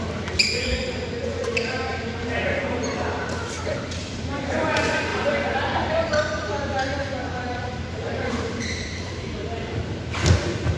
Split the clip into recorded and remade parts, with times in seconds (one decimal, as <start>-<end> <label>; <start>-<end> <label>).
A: 0.0-5.1 recorded; 5.1-6.5 remade; 6.5-7.0 recorded; 7.0-9.0 remade; 9.0-10.8 recorded